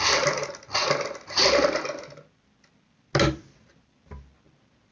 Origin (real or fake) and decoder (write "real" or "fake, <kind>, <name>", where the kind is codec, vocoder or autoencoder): real